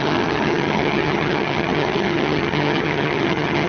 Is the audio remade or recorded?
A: remade